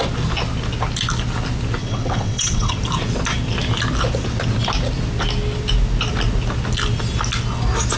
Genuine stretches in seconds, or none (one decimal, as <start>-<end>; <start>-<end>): 0.0-1.8; 2.8-8.0